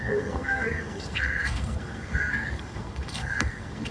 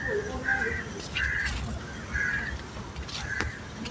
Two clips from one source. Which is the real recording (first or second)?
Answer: second